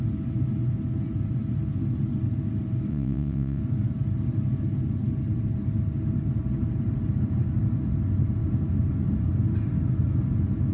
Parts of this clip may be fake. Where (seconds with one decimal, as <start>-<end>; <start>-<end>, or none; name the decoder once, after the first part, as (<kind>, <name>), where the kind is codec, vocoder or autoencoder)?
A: 2.9-3.6 (vocoder, WaveNeXt)